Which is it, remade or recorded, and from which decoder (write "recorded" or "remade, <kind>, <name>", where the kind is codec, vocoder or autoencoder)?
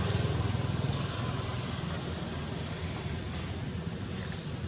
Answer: recorded